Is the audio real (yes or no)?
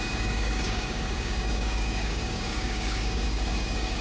no